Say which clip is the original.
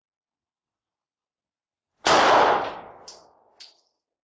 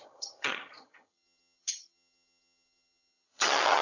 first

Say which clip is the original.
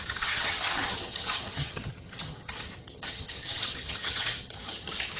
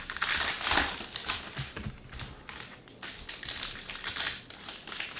second